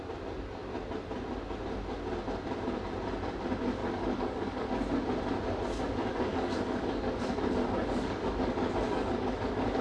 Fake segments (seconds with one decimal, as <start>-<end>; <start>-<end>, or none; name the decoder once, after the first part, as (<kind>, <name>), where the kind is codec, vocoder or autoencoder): 3.8-4.7 (codec, DAC); 6.1-9.8